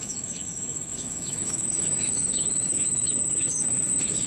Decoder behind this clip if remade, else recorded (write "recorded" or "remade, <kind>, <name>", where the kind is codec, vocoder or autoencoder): remade, autoencoder, DAC-VAE